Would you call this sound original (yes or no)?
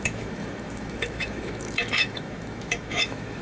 no